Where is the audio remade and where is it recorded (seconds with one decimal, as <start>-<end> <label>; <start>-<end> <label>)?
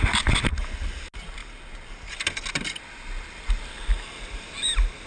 0.0-5.1 recorded